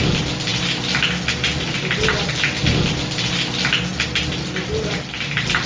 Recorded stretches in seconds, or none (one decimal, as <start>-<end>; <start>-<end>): 0.0-5.7